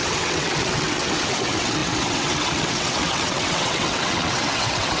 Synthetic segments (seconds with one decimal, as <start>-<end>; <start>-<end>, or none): 0.0-5.0